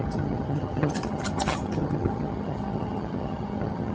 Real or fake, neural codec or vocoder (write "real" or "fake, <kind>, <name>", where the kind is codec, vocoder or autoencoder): fake, vocoder, HiFi-GAN